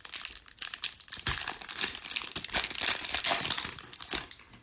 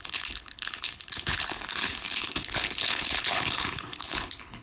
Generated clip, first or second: second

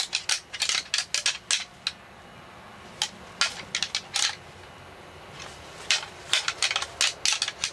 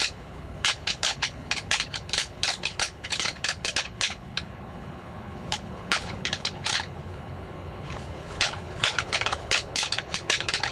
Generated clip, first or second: second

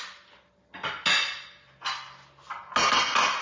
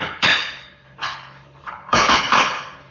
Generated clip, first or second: second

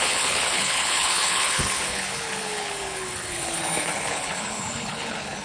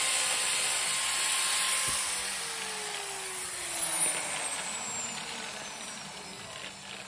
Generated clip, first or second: first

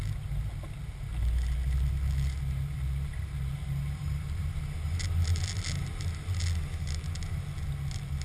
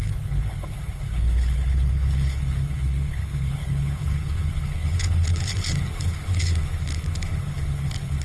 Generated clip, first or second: second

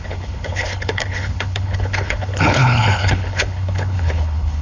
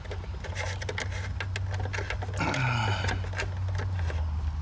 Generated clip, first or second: first